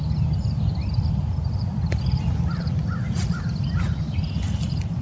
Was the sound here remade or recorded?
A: recorded